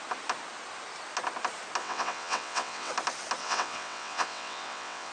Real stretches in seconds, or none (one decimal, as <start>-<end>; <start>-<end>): 0.0-1.8; 2.9-3.4